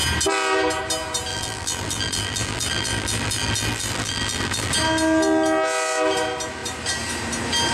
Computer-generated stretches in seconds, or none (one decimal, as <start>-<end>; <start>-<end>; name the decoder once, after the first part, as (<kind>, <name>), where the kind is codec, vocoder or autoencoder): 1.3-4.7 (vocoder, BigVGAN v2)